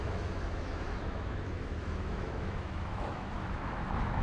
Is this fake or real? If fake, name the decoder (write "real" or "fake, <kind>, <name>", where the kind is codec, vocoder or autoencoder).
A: fake, autoencoder, DAC-VAE